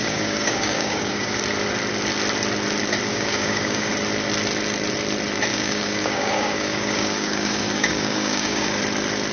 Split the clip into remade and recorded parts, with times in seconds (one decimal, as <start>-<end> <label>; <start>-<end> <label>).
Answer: 0.0-1.4 remade; 1.4-3.1 recorded; 3.1-3.9 remade; 3.9-5.5 recorded; 5.5-8.8 remade; 8.8-9.3 recorded